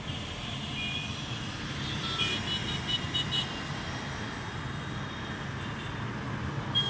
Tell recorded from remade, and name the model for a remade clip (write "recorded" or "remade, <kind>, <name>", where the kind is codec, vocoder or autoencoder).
recorded